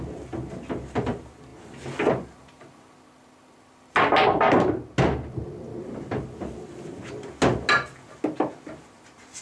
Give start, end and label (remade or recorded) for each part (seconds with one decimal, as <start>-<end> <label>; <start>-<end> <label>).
0.0-9.4 recorded